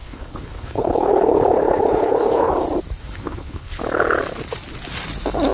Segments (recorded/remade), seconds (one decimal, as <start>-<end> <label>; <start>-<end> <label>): 0.0-2.5 remade; 2.5-3.0 recorded; 3.0-3.8 remade; 3.8-5.5 recorded

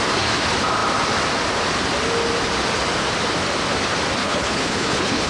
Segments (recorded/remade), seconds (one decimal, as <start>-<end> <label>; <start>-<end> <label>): 0.0-4.2 recorded; 4.2-5.3 remade

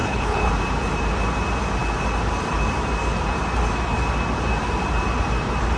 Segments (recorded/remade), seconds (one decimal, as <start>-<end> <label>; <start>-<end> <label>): 0.0-0.5 remade; 0.5-5.8 recorded

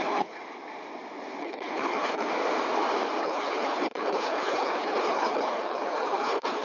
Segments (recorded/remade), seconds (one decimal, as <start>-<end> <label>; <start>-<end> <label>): 0.0-0.4 remade; 0.4-1.4 recorded; 1.4-2.3 remade; 2.3-3.2 recorded; 3.2-6.6 remade

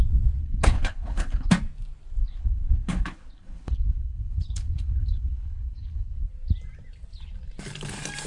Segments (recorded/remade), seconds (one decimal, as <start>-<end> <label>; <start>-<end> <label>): 0.0-0.4 recorded; 0.4-1.5 remade; 1.5-2.2 recorded; 2.2-6.3 remade; 6.3-8.3 recorded

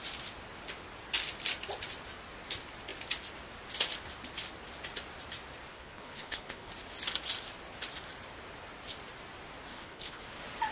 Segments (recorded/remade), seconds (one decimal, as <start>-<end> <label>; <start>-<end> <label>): 0.0-5.7 recorded; 5.7-6.7 remade; 6.7-9.7 recorded; 9.7-10.2 remade; 10.2-10.7 recorded

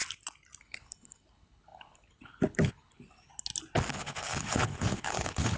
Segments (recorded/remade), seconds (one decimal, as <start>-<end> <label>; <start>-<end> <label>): 0.0-0.6 recorded; 0.6-3.3 remade; 3.3-3.9 recorded; 3.9-5.6 remade